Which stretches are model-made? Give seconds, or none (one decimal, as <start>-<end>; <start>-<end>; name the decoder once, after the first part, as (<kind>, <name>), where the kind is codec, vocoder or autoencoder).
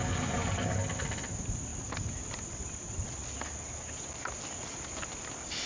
none